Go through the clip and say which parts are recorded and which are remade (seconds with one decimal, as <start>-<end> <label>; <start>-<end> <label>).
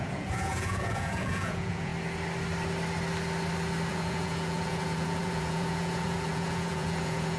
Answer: 0.0-1.9 remade; 1.9-3.9 recorded; 3.9-7.4 remade